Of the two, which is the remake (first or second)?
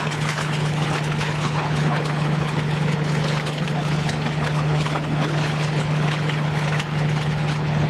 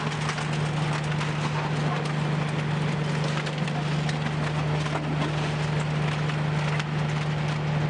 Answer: first